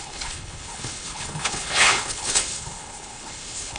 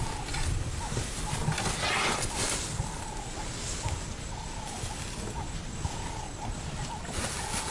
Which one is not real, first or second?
first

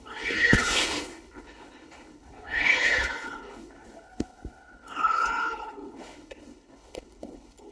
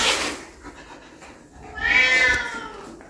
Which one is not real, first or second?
first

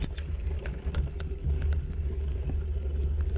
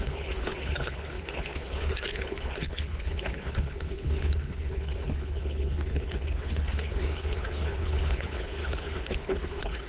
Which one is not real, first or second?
second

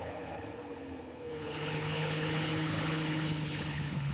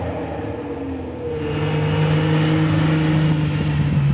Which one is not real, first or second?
first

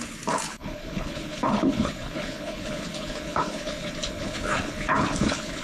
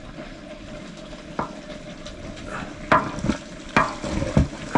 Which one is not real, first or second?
first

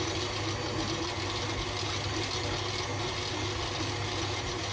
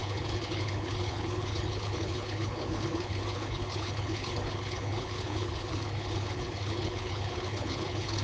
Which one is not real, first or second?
second